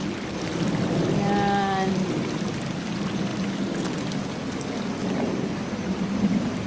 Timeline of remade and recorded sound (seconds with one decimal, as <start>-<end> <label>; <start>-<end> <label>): 0.0-6.7 recorded